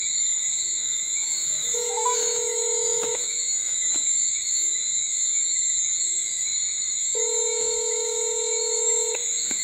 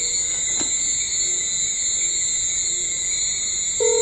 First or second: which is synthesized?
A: first